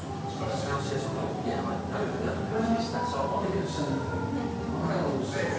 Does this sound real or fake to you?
real